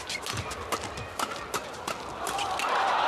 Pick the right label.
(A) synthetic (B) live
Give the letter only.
B